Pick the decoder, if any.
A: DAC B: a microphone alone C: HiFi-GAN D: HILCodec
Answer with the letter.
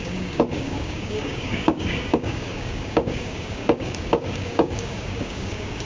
A